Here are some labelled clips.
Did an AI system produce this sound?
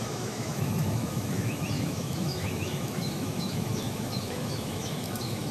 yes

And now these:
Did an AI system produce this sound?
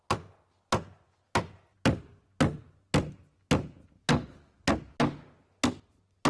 no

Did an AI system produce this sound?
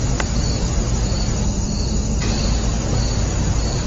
no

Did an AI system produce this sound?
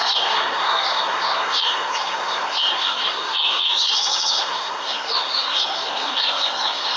yes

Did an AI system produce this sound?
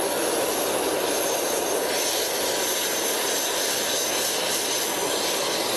no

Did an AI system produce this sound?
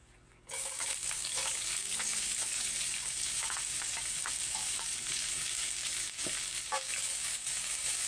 yes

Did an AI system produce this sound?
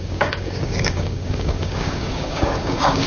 yes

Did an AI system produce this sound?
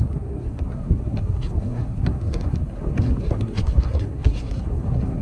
yes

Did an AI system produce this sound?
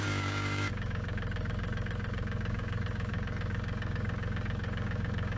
yes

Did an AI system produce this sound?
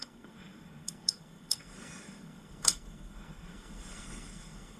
yes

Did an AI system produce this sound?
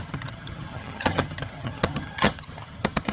yes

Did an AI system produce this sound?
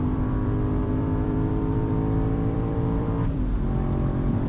yes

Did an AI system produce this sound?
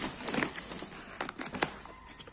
no